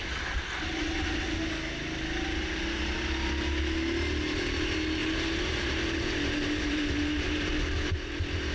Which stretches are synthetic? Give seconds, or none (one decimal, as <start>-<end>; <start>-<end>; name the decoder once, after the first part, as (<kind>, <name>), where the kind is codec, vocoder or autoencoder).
5.0-7.5 (vocoder, BigVGAN v2)